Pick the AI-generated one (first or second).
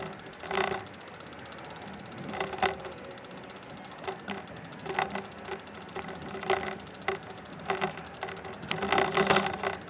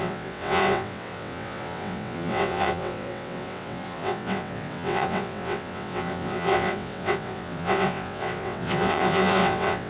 second